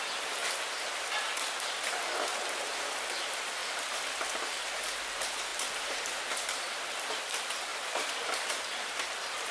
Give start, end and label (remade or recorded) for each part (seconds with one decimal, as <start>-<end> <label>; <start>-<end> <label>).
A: 0.0-0.4 remade; 0.4-2.6 recorded; 2.6-3.6 remade; 3.6-5.0 recorded; 5.0-9.5 remade